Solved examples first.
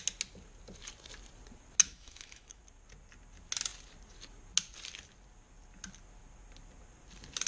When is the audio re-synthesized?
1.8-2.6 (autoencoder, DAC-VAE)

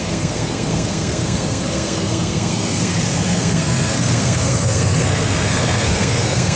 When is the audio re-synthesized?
0.0-6.6 (codec, SNAC)